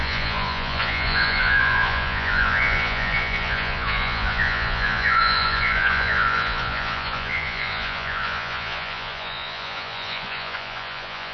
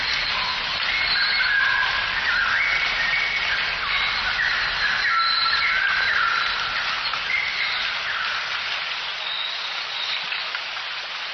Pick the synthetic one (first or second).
first